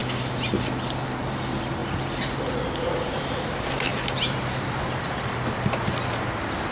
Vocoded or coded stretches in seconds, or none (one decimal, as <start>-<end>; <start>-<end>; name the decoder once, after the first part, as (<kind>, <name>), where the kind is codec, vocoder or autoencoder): 1.2-1.8 (vocoder, BigVGAN v2); 3.1-6.7